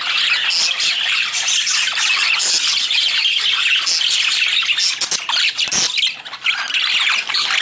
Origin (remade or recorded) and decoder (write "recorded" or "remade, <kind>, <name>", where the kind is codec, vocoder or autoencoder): recorded